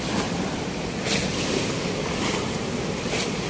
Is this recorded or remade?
recorded